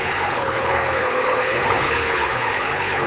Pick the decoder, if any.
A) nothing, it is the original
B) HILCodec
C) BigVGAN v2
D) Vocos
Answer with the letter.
B